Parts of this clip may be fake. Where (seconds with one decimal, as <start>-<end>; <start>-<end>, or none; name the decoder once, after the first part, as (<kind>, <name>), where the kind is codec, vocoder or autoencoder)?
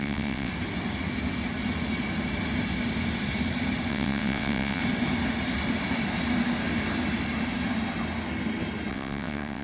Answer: 0.0-0.5 (vocoder, WaveNeXt); 3.9-4.8; 8.9-9.6